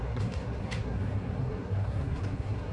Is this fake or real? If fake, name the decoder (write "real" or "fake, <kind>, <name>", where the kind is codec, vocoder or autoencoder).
fake, codec, SNAC